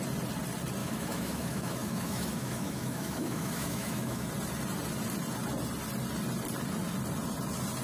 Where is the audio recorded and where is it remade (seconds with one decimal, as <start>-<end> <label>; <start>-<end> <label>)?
0.0-0.8 recorded; 0.8-4.3 remade; 4.3-7.8 recorded